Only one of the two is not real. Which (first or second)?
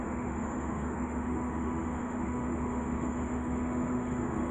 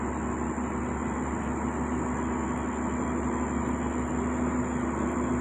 first